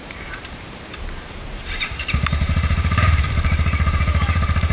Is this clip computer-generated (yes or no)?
yes